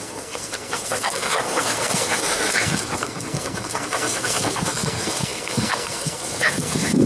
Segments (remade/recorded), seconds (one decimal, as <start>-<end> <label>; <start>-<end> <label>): 0.0-7.1 remade